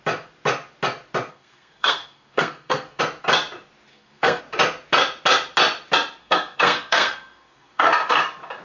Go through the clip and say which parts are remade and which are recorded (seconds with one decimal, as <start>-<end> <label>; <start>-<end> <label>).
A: 0.0-1.3 recorded; 1.3-3.0 remade; 3.0-3.9 recorded; 3.9-4.4 remade; 4.4-6.2 recorded; 6.2-8.2 remade; 8.2-8.6 recorded